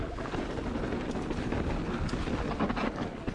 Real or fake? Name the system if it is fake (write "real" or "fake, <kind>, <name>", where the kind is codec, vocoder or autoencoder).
real